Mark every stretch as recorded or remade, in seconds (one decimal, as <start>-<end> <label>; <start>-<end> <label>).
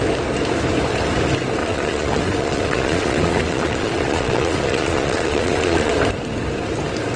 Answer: 0.0-1.6 recorded; 1.6-5.9 remade; 5.9-7.2 recorded